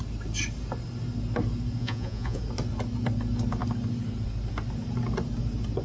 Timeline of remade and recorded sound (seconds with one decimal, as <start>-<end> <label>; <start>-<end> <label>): 0.0-1.8 recorded; 1.8-2.4 remade; 2.4-5.8 recorded